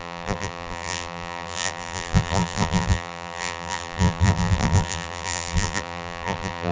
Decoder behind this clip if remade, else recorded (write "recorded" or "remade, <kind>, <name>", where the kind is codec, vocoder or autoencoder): remade, vocoder, BigVGAN v2